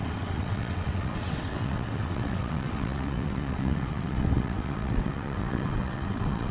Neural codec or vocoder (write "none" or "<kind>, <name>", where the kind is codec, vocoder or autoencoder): vocoder, WaveNeXt